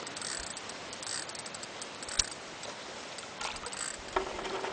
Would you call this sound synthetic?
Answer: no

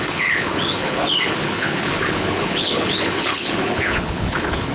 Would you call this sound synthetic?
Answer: yes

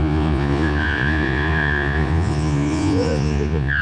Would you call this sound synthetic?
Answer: yes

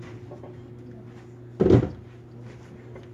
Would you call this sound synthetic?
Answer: no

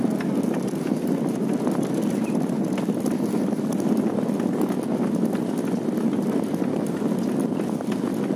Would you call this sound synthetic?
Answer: no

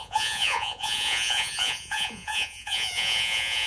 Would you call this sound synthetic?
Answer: yes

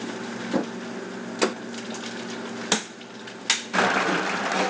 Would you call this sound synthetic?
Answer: no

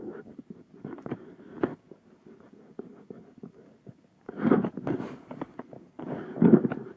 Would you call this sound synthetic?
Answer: yes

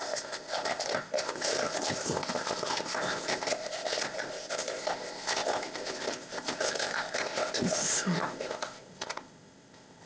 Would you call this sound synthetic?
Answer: yes